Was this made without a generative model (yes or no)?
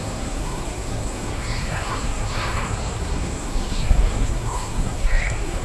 no